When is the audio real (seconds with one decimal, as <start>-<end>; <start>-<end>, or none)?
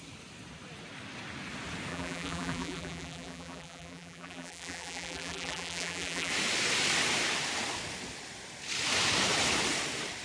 0.0-1.9; 6.3-10.2